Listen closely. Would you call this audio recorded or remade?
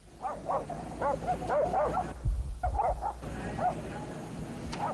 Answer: recorded